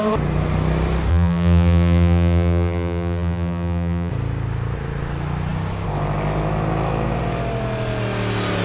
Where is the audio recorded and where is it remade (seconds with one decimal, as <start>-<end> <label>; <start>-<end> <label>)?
0.0-1.1 recorded; 1.1-4.1 remade; 4.1-8.6 recorded